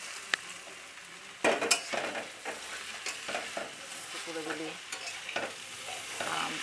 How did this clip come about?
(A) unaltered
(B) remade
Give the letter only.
A